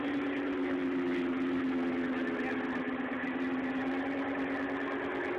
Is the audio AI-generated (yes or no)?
no